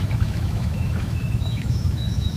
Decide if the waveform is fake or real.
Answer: fake